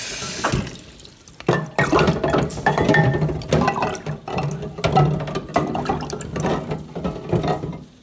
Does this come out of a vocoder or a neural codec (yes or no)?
no